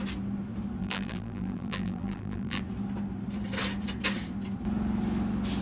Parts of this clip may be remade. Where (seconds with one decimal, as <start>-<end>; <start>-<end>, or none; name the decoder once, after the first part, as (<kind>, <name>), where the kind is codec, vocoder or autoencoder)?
0.8-2.6 (vocoder, BigVGAN v2)